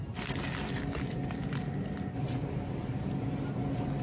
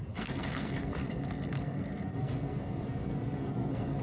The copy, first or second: second